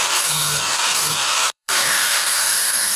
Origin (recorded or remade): remade